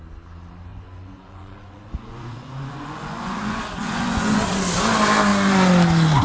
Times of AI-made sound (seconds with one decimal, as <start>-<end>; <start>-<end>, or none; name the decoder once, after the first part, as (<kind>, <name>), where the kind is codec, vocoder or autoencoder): 0.7-4.4 (vocoder, Vocos)